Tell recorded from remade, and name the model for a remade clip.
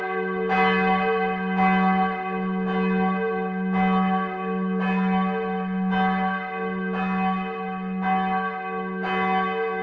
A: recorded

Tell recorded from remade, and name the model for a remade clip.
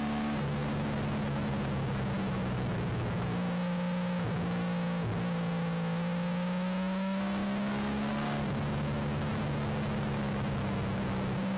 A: recorded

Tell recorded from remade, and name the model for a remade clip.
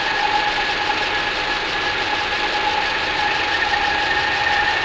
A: recorded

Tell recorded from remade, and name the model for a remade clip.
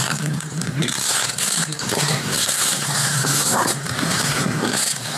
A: remade, codec, SNAC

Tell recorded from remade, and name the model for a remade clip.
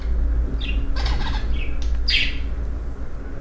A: recorded